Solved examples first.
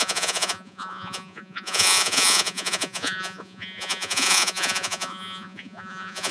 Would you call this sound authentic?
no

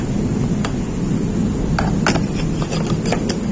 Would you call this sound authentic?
yes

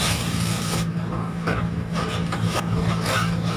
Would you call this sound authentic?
no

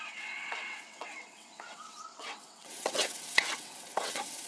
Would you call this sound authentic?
no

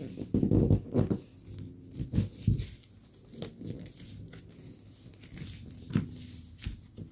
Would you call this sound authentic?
yes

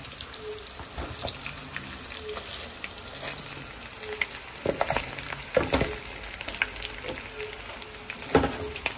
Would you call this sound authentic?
yes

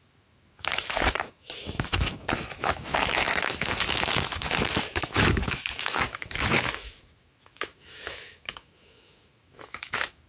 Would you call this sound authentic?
no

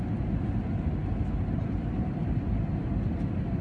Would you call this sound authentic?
yes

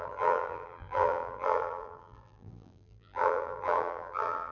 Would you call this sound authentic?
no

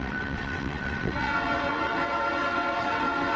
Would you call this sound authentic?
no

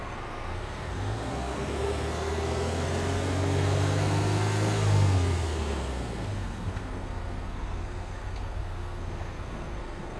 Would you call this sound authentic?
no